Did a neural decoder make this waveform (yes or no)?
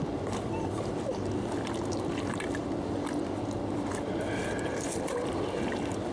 no